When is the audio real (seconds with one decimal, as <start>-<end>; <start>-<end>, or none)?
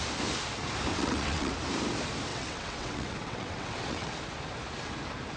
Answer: 0.0-0.9; 1.5-2.3; 4.1-5.4